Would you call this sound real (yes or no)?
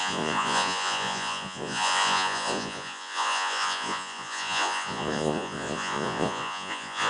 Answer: no